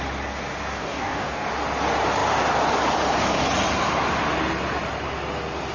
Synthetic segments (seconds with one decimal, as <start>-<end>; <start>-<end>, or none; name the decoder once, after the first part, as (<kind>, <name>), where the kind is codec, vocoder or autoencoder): 0.8-1.5 (codec, DAC)